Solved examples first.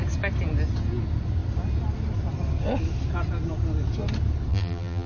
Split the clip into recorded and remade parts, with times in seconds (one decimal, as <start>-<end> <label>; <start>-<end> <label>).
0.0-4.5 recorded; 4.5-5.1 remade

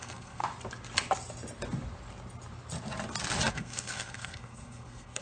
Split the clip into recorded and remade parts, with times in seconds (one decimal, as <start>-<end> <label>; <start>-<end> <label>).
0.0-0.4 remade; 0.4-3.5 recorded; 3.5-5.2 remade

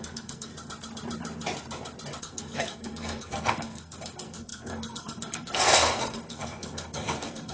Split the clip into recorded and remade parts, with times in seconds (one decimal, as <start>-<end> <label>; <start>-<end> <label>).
0.0-0.5 remade; 0.5-2.2 recorded; 2.2-7.5 remade

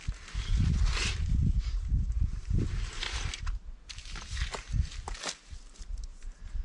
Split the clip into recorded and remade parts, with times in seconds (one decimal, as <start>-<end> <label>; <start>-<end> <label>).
0.0-1.4 recorded; 1.4-3.4 remade; 3.4-6.6 recorded

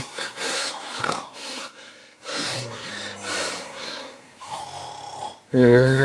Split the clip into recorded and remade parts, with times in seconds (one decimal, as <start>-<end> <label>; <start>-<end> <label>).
0.0-2.9 remade; 2.9-3.6 recorded; 3.6-4.6 remade; 4.6-5.5 recorded; 5.5-6.0 remade

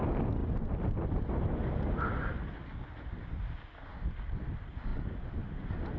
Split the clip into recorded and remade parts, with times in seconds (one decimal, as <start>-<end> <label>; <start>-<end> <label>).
0.0-6.0 recorded

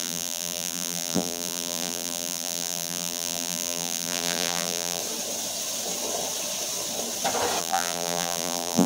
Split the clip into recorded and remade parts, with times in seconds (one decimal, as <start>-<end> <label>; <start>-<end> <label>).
0.0-5.0 remade; 5.0-7.6 recorded; 7.6-8.9 remade